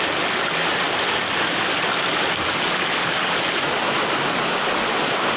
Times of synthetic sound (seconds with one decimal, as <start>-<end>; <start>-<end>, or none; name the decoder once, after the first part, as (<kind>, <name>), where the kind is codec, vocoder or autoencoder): none